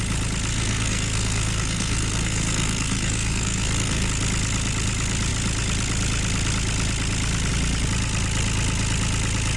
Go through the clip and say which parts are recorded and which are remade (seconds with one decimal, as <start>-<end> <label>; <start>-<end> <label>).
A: 0.0-0.5 recorded; 0.5-4.1 remade; 4.1-9.6 recorded